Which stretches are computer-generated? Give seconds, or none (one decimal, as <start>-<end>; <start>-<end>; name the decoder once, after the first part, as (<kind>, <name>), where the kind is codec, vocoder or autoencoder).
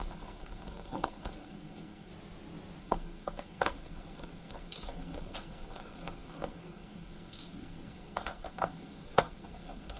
0.0-2.1 (codec, SNAC); 2.8-10.0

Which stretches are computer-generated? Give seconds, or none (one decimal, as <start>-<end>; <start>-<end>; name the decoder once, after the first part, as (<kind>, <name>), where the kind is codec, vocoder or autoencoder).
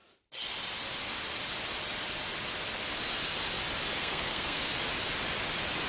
4.0-4.7 (codec, SNAC)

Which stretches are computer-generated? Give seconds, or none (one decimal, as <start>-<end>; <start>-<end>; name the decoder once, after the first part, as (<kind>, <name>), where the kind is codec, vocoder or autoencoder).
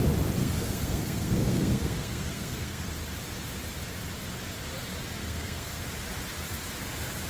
0.4-2.9 (codec, SNAC); 5.2-5.8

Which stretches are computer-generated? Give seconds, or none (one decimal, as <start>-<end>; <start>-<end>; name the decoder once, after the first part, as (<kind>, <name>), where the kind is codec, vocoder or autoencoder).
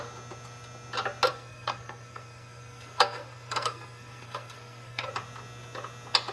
1.3-5.1 (codec, SNAC)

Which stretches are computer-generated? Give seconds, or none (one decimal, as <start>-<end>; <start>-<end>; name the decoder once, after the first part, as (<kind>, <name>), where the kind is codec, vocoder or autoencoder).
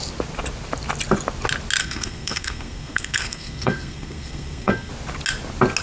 1.8-4.9 (codec, SNAC)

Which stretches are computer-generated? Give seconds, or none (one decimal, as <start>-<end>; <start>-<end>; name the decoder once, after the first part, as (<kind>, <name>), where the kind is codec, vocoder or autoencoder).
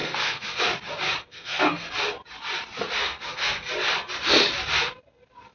0.0-0.6 (codec, SNAC); 1.2-1.9; 3.0-3.7